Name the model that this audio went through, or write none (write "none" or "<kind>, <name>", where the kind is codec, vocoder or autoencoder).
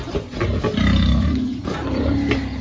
none